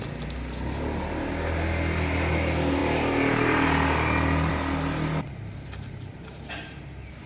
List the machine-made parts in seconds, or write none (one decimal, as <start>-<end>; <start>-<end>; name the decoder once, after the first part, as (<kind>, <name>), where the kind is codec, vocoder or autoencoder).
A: none